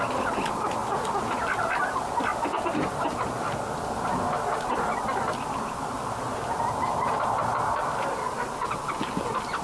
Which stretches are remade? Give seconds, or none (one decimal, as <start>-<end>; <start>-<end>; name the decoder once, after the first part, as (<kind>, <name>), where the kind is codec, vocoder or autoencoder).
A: 0.8-1.7 (vocoder, BigVGAN v2); 2.3-3.3